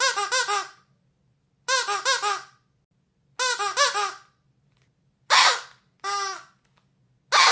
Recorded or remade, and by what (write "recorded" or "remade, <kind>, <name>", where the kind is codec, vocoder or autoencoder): recorded